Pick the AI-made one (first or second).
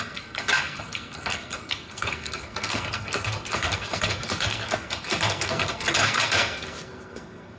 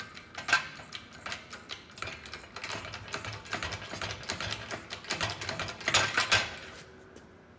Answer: first